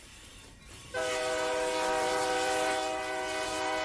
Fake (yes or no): yes